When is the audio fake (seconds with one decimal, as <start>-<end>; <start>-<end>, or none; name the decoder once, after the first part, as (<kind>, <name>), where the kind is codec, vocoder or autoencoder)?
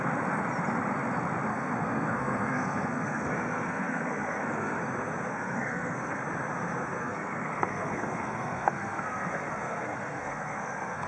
1.5-4.8 (codec, SNAC); 5.3-6.2; 7.0-11.1